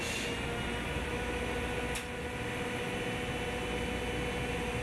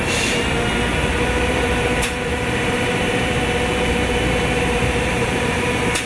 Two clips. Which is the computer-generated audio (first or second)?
second